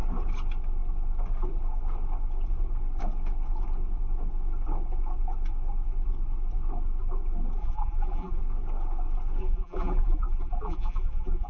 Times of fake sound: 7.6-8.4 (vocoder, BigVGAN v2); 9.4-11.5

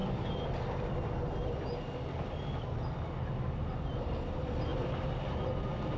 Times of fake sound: none

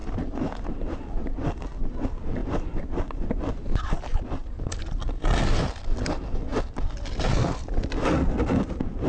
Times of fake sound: 0.0-1.7 (vocoder, BigVGAN v2); 4.4-5.0

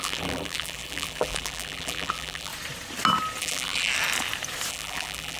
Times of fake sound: 0.0-2.5 (vocoder, BigVGAN v2); 3.4-3.9; 4.7-5.4